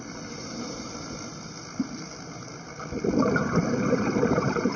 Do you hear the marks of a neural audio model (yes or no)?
no